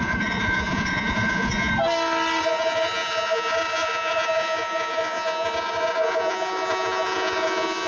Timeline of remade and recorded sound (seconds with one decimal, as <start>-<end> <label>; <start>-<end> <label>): 0.0-1.7 remade; 1.7-2.4 recorded; 2.4-7.9 remade

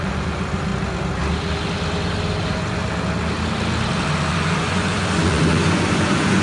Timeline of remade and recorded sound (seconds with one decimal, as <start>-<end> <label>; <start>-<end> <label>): 0.0-0.7 remade; 0.7-2.4 recorded; 2.4-2.8 remade; 2.8-4.3 recorded; 4.3-6.4 remade

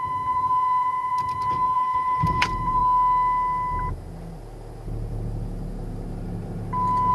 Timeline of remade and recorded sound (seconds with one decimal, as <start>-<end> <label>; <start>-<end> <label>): 0.0-2.8 remade; 2.8-7.1 recorded

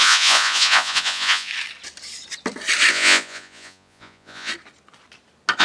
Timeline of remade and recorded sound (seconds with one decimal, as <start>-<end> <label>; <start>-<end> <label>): 0.0-1.5 remade; 1.5-2.9 recorded; 2.9-4.5 remade; 4.5-5.6 recorded

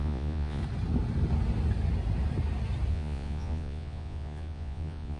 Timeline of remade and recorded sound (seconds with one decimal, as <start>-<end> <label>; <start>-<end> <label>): 0.0-0.6 remade; 0.6-2.9 recorded; 2.9-5.2 remade

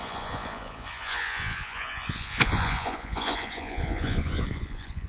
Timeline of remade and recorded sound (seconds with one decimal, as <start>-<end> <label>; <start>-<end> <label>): 0.0-5.1 remade